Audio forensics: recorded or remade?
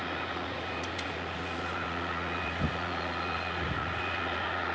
remade